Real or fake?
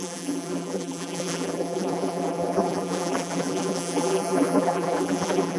fake